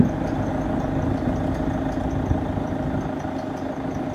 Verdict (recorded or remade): recorded